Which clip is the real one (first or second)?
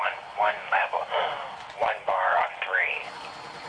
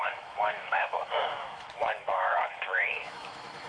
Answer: first